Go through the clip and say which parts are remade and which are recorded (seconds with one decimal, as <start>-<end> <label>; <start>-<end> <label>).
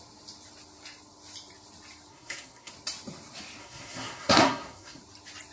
0.0-2.1 recorded; 2.1-2.7 remade; 2.7-3.6 recorded; 3.6-5.0 remade; 5.0-5.5 recorded